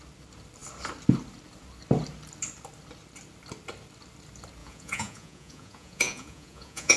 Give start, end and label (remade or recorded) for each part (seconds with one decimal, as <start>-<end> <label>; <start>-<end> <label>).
0.0-4.6 recorded; 4.6-7.0 remade